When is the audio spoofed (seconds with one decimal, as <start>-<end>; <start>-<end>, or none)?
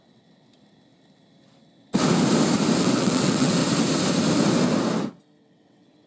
0.0-0.5; 2.8-3.6; 5.4-6.1